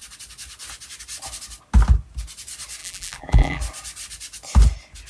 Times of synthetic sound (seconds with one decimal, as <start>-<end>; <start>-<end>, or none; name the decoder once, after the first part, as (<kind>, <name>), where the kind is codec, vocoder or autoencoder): 2.8-3.6 (vocoder, BigVGAN v2)